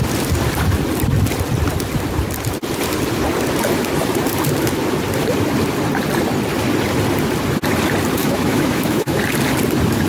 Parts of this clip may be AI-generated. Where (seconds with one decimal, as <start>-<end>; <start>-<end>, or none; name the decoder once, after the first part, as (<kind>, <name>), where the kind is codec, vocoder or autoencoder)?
8.2-9.2 (autoencoder, DAC-VAE)

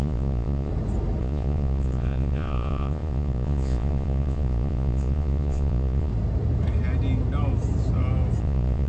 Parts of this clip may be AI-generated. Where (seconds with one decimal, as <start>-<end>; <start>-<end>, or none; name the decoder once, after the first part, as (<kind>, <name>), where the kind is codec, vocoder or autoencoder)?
0.0-0.7 (vocoder, Vocos); 1.2-6.1; 8.4-8.9

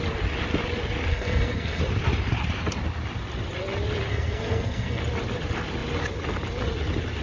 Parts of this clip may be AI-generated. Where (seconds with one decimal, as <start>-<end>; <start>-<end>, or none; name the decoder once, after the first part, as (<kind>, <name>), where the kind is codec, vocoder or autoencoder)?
1.1-1.8 (codec, SNAC); 4.1-5.0